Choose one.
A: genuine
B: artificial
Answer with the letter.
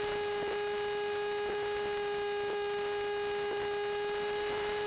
A